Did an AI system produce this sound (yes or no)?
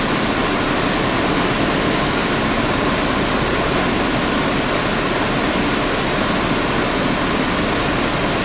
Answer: no